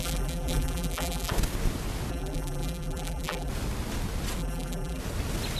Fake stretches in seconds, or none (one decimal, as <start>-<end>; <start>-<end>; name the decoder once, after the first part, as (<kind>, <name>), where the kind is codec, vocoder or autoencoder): 0.0-1.3 (vocoder, BigVGAN v2); 2.1-3.5; 4.4-5.0